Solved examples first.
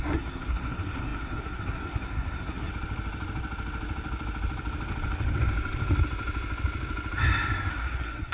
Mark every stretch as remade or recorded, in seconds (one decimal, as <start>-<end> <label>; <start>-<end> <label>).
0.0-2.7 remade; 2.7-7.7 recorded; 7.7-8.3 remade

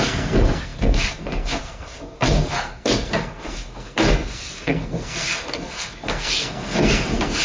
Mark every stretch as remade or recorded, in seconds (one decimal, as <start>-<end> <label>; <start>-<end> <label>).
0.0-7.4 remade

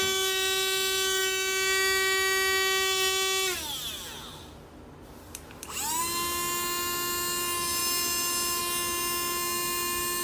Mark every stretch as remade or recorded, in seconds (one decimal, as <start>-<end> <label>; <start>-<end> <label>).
0.0-10.2 recorded

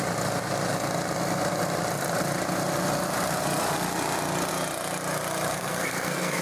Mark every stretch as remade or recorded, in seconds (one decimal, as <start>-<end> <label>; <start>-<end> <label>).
0.0-5.5 recorded; 5.5-6.4 remade

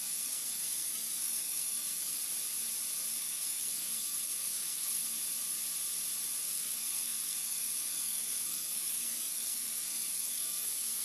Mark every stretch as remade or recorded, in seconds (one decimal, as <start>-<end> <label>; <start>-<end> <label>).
0.0-2.2 remade; 2.2-3.2 recorded; 3.2-5.0 remade; 5.0-6.4 recorded; 6.4-11.0 remade

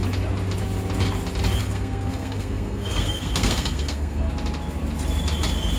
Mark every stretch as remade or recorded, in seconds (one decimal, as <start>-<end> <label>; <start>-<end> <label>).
0.0-1.6 recorded; 1.6-4.3 remade; 4.3-5.8 recorded

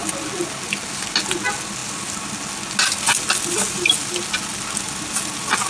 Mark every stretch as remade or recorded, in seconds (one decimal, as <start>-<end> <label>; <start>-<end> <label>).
0.0-5.7 recorded